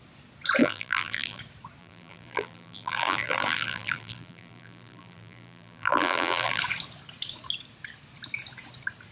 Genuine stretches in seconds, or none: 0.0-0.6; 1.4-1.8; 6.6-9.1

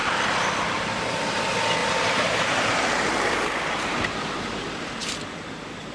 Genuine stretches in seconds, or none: 0.0-1.8; 5.1-5.9

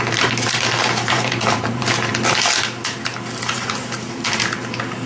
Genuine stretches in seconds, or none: 2.1-3.5

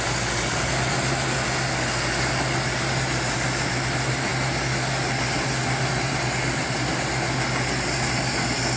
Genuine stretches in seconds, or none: 0.0-8.8

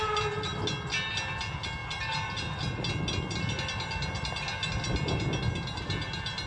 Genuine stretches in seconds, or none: 0.0-6.5

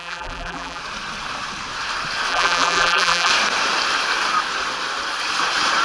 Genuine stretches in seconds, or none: 0.8-2.3; 3.3-5.8